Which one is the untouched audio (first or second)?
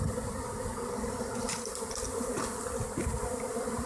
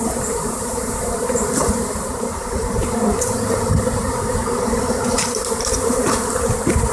first